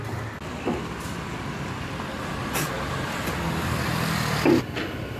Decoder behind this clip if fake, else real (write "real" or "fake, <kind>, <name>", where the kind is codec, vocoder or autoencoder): real